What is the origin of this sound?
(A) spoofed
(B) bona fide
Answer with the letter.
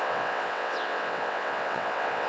A